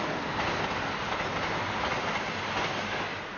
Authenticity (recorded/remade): recorded